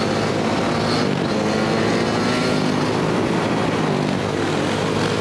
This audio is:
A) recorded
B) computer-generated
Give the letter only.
A